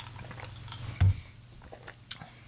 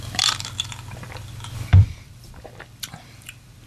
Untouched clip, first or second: first